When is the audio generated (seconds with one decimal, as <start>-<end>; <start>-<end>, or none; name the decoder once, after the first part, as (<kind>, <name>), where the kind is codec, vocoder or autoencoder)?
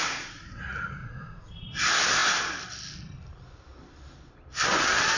0.0-0.6 (vocoder, Vocos); 1.0-1.7